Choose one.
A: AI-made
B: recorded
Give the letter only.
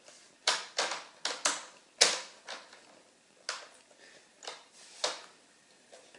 B